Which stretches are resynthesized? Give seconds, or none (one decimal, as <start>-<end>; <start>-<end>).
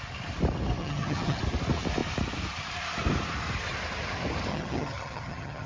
0.8-1.4; 4.5-5.7